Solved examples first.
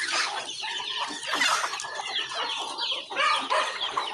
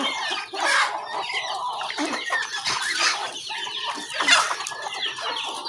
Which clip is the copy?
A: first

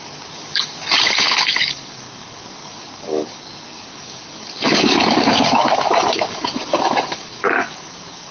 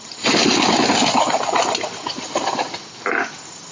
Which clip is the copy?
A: first